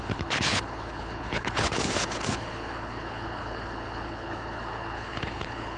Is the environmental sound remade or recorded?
remade